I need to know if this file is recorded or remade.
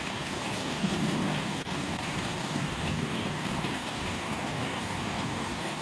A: remade